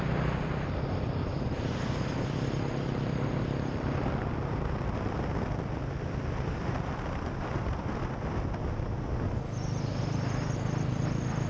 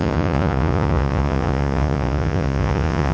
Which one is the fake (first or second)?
second